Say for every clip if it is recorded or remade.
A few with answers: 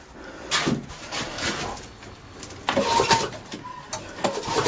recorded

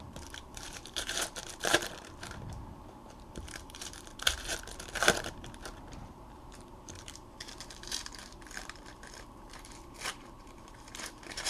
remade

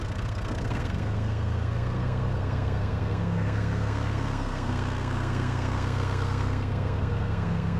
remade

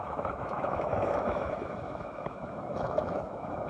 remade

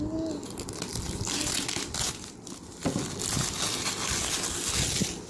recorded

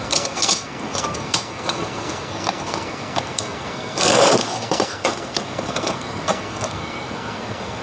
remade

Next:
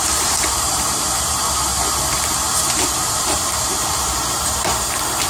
remade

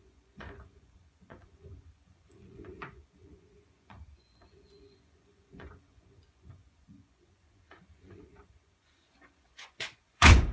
remade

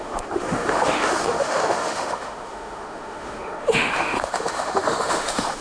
remade